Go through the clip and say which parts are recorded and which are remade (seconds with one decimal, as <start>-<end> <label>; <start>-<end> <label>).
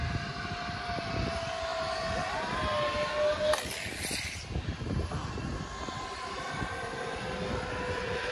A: 0.0-8.3 recorded